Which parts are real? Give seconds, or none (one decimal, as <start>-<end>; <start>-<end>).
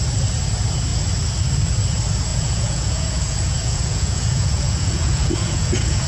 0.0-2.3